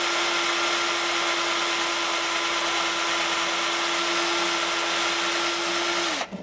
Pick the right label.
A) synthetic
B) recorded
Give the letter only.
B